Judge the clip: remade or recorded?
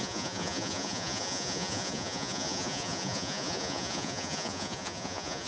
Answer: remade